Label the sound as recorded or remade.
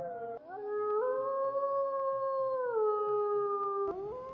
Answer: recorded